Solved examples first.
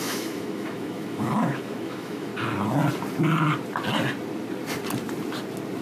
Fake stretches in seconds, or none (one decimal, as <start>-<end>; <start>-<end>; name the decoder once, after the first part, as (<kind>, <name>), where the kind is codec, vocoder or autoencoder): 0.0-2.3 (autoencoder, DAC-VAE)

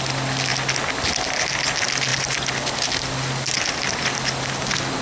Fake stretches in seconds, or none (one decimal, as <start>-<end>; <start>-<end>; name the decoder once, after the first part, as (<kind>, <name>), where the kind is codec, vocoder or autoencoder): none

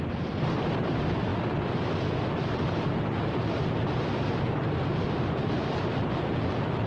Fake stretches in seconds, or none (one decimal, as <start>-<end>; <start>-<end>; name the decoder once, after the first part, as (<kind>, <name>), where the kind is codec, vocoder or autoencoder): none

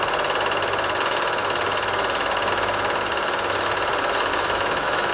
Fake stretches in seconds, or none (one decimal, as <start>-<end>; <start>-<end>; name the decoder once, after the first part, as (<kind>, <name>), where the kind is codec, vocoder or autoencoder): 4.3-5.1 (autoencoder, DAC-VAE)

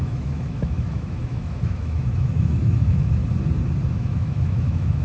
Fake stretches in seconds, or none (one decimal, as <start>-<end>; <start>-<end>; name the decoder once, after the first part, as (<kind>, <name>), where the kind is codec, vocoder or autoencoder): 0.0-3.2 (autoencoder, DAC-VAE); 3.9-5.0